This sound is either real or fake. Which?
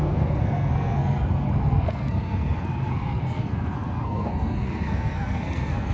fake